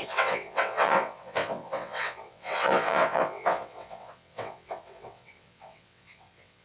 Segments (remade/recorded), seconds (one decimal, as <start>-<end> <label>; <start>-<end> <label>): 0.0-6.6 remade